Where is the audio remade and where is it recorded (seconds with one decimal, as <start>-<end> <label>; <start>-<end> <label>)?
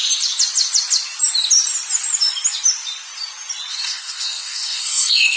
0.0-3.7 recorded; 3.7-5.4 remade